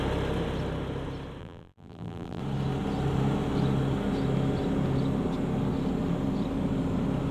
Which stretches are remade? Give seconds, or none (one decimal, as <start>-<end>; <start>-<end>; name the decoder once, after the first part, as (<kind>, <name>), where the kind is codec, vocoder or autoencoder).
1.4-2.4 (vocoder, BigVGAN v2)